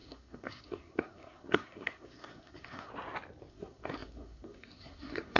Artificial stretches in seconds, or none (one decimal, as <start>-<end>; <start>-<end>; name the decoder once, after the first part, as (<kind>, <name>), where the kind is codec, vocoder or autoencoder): 0.0-2.9 (codec, SNAC); 3.5-5.4